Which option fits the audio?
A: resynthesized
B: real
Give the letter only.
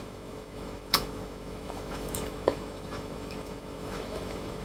A